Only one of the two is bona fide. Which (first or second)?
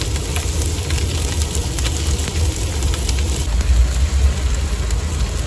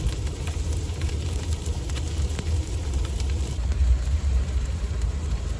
first